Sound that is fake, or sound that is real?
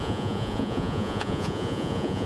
fake